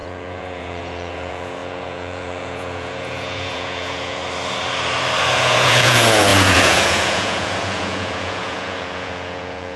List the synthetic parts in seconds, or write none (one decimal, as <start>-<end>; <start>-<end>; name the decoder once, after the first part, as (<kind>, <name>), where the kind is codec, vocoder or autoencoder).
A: 0.0-4.2 (vocoder, Vocos); 5.4-9.8